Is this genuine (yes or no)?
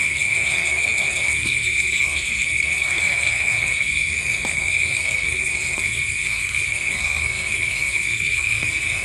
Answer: no